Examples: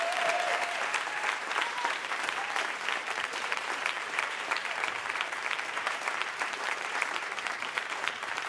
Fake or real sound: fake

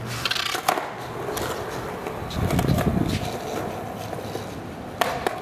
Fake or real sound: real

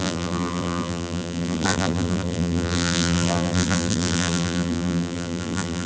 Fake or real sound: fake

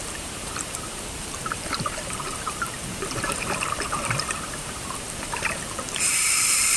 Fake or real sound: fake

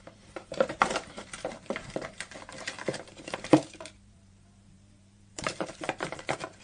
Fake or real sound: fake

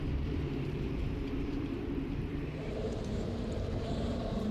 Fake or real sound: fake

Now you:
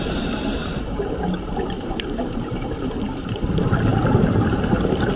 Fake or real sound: fake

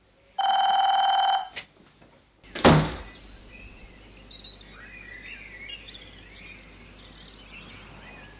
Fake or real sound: real